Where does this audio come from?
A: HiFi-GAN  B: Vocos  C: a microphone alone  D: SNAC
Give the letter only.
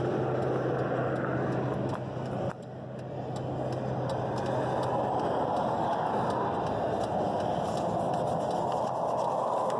C